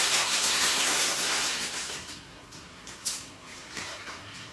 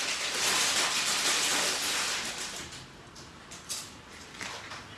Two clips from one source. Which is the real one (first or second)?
second